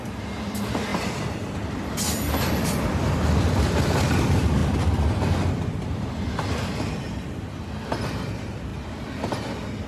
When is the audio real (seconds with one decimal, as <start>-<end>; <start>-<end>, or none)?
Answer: 0.0-0.9; 3.4-9.9